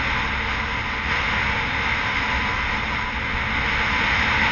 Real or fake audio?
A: real